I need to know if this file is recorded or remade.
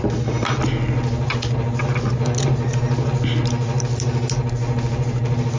recorded